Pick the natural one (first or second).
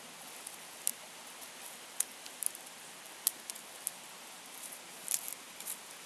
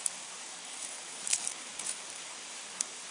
first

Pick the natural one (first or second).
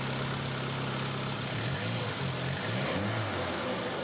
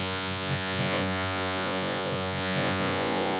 first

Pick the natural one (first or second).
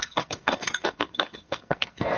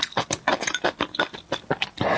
second